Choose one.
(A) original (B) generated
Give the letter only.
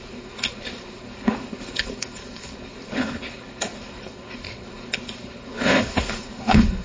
B